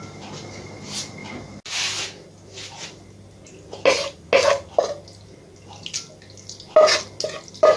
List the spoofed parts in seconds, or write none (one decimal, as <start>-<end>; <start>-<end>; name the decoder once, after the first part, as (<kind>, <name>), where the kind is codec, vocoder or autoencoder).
none